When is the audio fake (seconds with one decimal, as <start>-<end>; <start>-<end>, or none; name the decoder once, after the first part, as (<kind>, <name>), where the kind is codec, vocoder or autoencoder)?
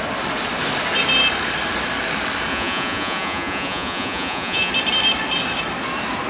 2.5-4.7 (vocoder, Vocos)